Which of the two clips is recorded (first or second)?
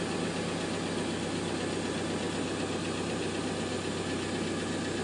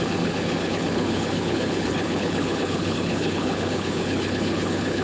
first